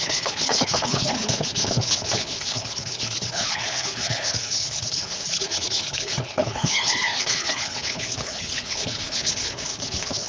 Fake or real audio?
fake